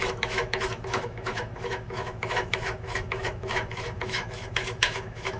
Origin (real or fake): fake